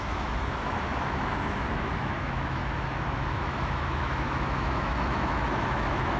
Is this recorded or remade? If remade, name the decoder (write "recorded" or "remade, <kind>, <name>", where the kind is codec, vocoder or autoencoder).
remade, autoencoder, DAC-VAE